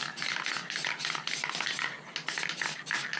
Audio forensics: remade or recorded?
recorded